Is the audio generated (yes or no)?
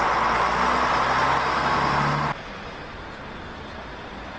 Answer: no